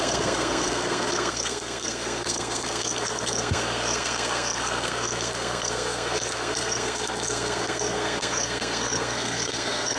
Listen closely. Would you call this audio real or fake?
fake